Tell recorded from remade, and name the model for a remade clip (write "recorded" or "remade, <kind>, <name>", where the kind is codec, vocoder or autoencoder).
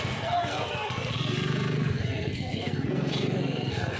remade, codec, SNAC